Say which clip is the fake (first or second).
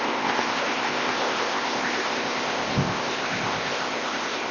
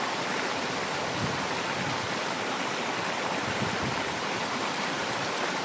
first